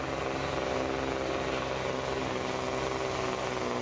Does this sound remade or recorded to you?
recorded